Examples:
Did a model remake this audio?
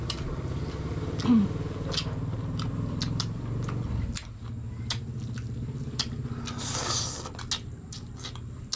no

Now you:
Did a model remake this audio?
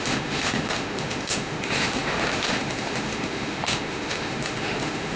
yes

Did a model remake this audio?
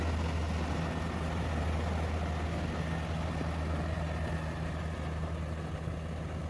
no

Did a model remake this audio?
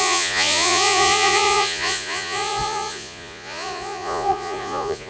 yes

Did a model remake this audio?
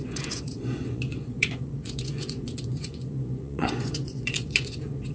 yes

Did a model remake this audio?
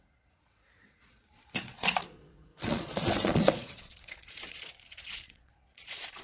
yes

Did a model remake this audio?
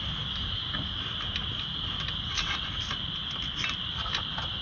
no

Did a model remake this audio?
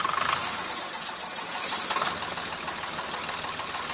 no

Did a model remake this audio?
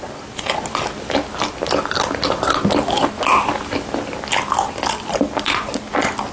no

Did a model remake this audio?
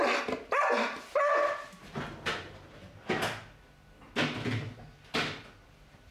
no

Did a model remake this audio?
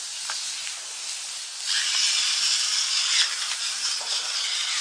no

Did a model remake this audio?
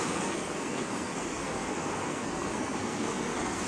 yes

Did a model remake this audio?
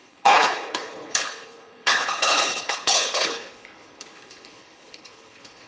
yes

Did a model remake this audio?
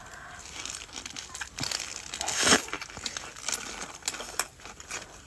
no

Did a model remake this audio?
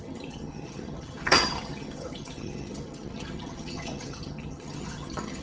yes